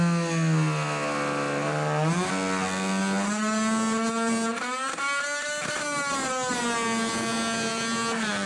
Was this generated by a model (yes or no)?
no